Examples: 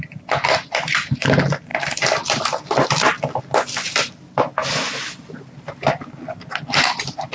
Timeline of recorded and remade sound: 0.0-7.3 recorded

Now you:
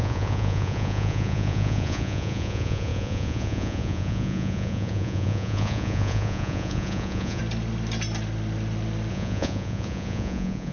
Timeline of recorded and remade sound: 0.0-7.4 remade; 7.4-9.1 recorded; 9.1-10.7 remade

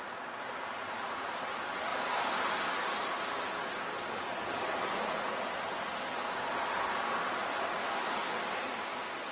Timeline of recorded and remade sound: 0.0-9.3 recorded